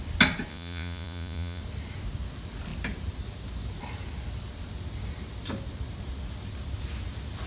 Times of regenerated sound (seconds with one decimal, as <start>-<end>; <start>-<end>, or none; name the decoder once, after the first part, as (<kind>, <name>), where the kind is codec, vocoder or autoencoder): 0.5-1.6 (vocoder, Vocos)